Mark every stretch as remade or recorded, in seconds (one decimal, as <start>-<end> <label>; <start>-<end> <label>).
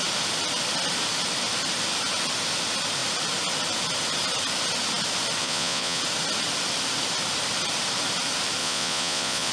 0.0-5.4 recorded; 5.4-6.0 remade; 6.0-8.6 recorded; 8.6-9.5 remade